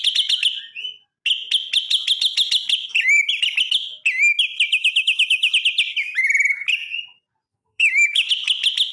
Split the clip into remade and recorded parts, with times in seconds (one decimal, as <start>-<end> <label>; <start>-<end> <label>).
0.0-4.7 recorded; 4.7-5.5 remade; 5.5-7.5 recorded; 7.5-8.3 remade; 8.3-8.9 recorded